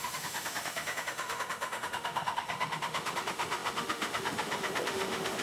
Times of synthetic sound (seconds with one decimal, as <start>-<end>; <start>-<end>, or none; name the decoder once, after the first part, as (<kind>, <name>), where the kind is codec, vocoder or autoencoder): 0.0-5.4 (autoencoder, DAC-VAE)